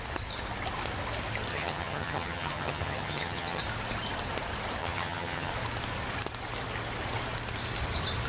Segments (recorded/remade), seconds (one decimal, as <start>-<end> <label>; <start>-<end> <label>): 0.0-1.5 recorded; 1.5-3.6 remade; 3.6-4.8 recorded; 4.8-5.5 remade; 5.5-8.3 recorded